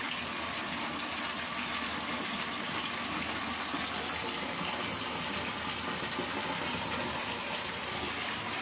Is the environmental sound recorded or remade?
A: recorded